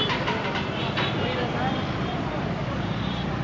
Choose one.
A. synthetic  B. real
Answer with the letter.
A